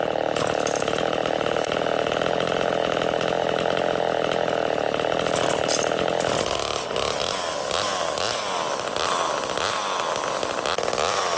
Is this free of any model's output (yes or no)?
yes